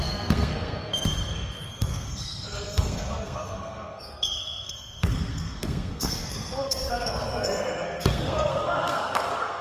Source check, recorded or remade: remade